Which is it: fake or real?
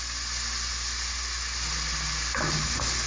real